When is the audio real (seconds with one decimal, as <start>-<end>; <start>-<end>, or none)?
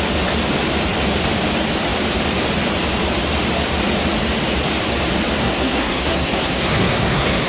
0.0-5.4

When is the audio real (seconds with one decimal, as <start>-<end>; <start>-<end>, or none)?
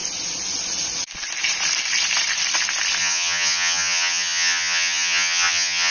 0.0-3.0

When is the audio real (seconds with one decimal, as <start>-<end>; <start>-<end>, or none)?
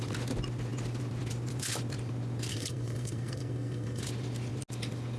0.0-2.5; 4.0-5.2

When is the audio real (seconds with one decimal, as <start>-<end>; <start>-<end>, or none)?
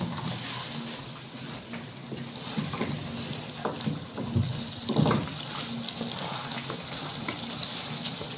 0.0-8.4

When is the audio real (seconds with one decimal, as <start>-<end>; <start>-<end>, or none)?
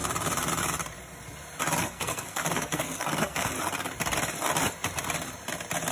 0.0-1.8; 3.5-5.9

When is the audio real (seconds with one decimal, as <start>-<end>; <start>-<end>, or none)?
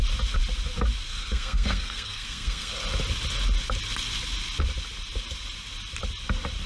0.0-1.1; 2.7-6.7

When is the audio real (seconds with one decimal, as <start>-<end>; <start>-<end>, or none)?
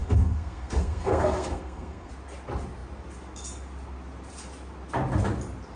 2.1-5.8